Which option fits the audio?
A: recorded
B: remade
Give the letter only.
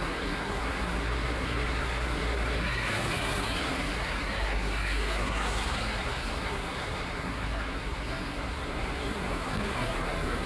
B